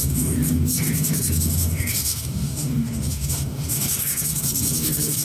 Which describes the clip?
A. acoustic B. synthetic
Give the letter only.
B